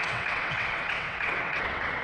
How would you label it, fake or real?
fake